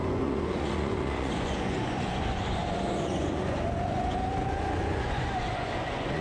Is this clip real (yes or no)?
no